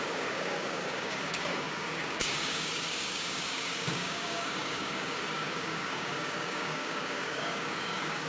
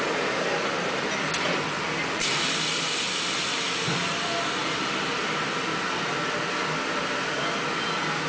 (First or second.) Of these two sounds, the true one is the second